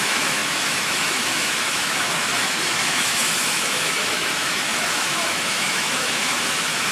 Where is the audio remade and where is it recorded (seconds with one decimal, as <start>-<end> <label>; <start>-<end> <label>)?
0.0-6.9 remade